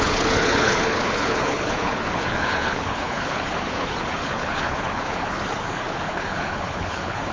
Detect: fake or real fake